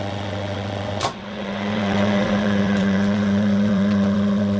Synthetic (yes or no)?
yes